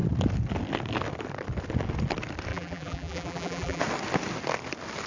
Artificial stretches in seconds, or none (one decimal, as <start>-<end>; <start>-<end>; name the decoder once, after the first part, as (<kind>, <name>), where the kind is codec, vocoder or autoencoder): 2.5-3.8 (vocoder, BigVGAN v2)